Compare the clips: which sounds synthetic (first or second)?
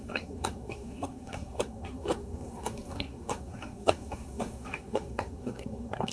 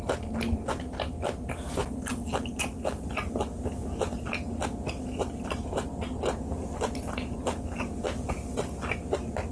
first